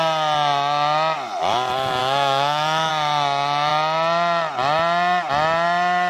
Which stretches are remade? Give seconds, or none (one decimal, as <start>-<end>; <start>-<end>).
2.0-2.9